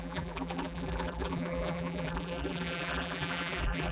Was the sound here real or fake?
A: fake